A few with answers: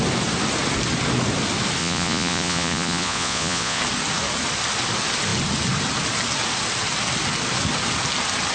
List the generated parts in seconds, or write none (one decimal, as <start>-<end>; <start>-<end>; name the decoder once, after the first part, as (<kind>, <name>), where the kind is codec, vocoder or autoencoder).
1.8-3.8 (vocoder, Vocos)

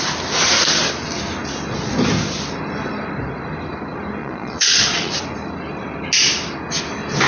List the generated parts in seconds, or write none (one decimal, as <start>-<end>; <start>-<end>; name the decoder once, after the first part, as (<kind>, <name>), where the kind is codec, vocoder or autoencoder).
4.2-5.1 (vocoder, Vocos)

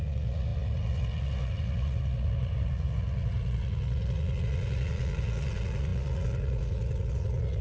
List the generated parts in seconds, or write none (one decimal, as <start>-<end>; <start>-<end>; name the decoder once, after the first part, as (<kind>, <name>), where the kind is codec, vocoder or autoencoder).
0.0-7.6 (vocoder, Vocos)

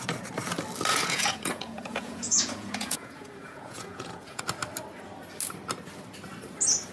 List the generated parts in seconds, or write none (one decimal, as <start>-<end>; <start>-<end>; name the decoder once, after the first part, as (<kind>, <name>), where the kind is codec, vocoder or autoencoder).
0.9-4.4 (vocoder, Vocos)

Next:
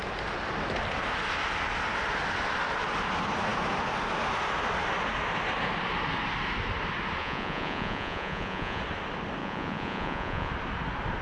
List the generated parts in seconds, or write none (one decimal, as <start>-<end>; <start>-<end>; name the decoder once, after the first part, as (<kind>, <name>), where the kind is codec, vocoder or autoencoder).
7.2-8.8 (vocoder, Vocos); 9.4-10.5

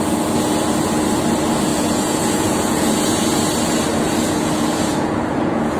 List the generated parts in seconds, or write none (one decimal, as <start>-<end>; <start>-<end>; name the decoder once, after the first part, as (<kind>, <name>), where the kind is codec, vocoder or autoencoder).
1.7-3.4 (vocoder, Vocos); 3.9-5.8